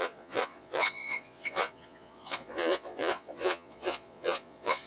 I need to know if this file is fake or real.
fake